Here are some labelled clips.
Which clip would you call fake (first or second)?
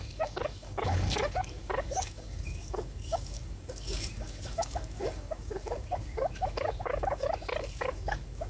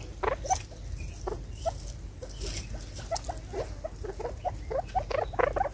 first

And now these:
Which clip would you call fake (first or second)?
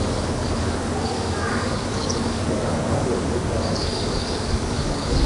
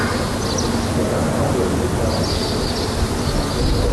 first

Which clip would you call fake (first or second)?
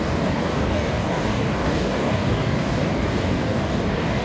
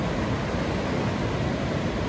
first